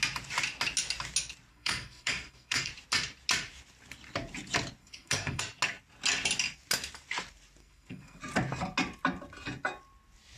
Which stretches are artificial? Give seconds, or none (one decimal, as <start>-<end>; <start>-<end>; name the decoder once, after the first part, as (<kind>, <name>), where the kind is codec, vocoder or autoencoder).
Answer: 1.5-2.7 (codec, SNAC); 4.8-5.4; 7.6-8.2